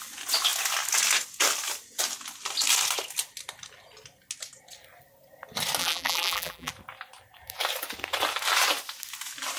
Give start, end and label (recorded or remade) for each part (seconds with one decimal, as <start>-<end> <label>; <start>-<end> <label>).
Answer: 0.0-5.8 recorded; 5.8-6.7 remade; 6.7-9.6 recorded